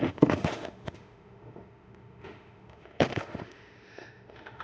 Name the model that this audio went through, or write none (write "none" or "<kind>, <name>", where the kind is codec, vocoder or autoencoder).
autoencoder, DAC-VAE